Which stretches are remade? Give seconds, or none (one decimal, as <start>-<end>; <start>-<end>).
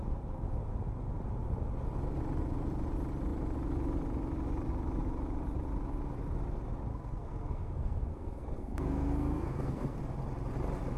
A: 6.9-10.0